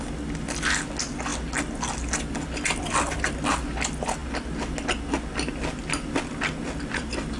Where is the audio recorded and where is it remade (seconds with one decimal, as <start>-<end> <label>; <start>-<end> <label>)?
0.0-7.4 recorded